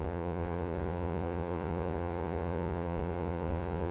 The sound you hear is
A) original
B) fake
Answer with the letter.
B